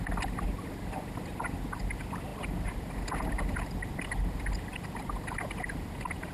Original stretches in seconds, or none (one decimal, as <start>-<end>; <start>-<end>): 0.0-6.3